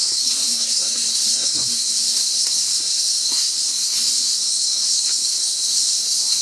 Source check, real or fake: fake